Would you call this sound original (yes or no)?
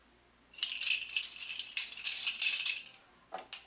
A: yes